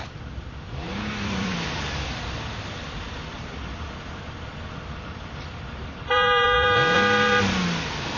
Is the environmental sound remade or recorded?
remade